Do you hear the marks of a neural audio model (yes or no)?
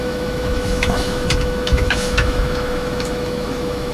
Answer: yes